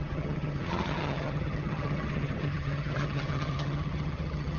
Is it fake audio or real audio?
fake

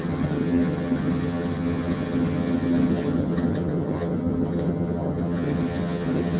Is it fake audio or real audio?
fake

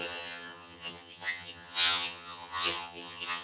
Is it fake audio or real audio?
fake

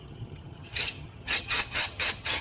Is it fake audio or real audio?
fake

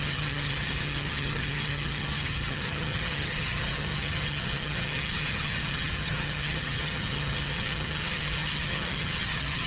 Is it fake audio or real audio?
fake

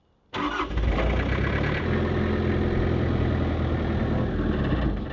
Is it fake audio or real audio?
real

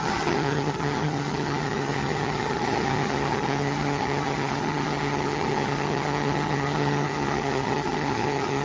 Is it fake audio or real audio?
fake